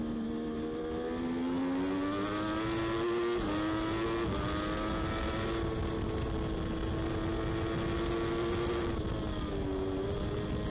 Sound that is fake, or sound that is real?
real